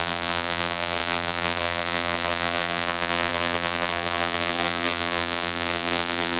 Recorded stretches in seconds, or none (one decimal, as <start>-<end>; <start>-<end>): none